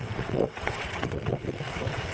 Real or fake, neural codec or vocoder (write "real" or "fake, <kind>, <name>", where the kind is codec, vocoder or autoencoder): fake, vocoder, WaveNeXt